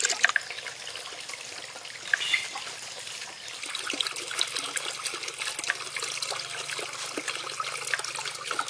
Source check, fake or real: real